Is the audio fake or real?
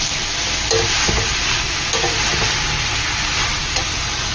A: real